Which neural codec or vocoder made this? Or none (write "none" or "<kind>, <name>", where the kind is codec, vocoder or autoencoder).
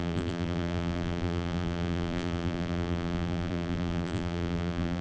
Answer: vocoder, BigVGAN v2